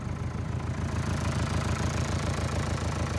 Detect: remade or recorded recorded